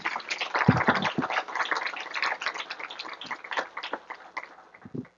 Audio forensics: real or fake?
real